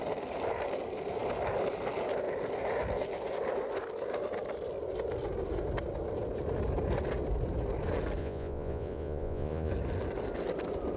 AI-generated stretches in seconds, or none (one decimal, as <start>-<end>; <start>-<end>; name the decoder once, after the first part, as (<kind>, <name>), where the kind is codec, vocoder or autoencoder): 8.2-9.7 (vocoder, Vocos)